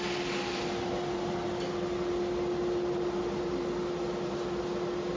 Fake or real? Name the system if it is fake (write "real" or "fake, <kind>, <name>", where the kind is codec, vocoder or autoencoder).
real